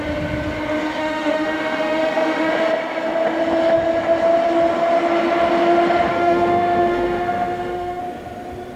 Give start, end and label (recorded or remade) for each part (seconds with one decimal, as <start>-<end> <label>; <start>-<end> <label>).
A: 0.0-1.0 recorded; 1.0-2.5 remade; 2.5-6.1 recorded; 6.1-8.0 remade; 8.0-8.8 recorded